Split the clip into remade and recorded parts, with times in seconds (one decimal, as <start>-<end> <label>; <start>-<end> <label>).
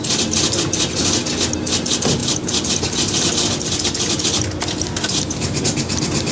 0.0-6.3 recorded